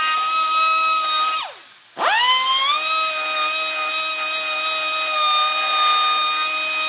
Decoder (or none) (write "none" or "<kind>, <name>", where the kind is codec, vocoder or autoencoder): none